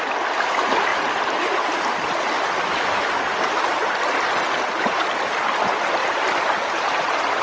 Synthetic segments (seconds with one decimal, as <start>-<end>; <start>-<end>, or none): 0.9-1.7; 6.0-7.4